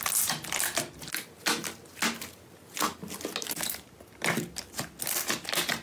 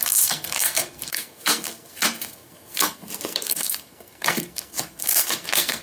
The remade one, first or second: second